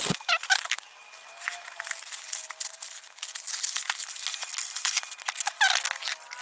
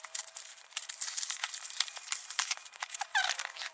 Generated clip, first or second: second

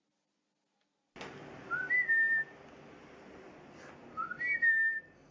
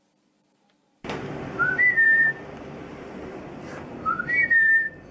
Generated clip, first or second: second